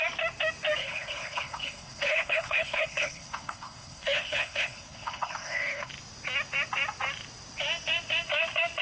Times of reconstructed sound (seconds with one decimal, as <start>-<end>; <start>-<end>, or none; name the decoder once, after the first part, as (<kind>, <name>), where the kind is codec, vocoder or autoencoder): 0.8-5.9 (codec, HILCodec)